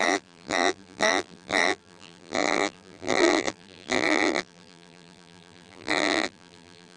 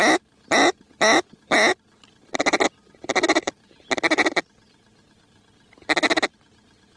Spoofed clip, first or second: first